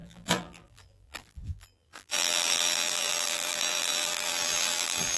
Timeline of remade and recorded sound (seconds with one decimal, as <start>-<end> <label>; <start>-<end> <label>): 0.0-5.2 remade